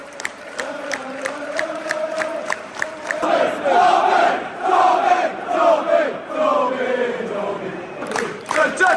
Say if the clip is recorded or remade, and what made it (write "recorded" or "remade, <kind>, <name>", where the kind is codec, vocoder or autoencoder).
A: remade, vocoder, BigVGAN v2